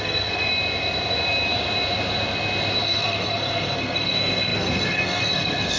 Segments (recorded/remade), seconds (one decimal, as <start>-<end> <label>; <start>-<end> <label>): 0.0-0.5 remade; 0.5-2.8 recorded; 2.8-5.8 remade